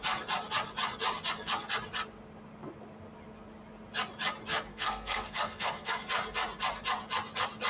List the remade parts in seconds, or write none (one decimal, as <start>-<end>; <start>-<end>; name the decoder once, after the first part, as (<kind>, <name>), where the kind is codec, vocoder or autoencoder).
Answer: 4.7-6.0 (codec, SNAC)